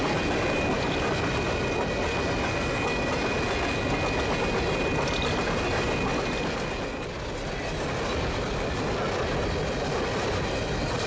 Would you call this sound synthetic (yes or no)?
no